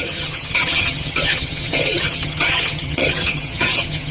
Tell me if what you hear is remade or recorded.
remade